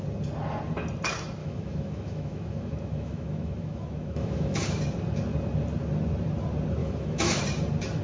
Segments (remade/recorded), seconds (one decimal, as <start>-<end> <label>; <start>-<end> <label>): 0.0-1.4 recorded; 1.4-4.6 remade; 4.6-6.8 recorded; 6.8-7.4 remade; 7.4-8.0 recorded